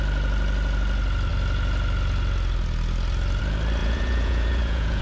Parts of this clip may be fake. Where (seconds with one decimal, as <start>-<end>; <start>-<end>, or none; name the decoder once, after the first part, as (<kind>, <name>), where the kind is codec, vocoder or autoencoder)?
3.8-5.0 (vocoder, Vocos)